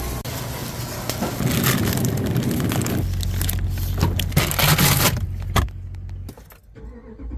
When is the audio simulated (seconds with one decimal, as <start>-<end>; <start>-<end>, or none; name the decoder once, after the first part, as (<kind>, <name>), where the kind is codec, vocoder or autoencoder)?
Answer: none